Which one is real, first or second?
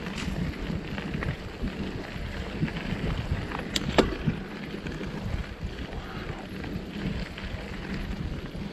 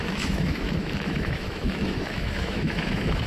first